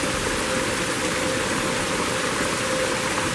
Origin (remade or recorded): recorded